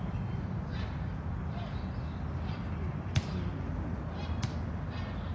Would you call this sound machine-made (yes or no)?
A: no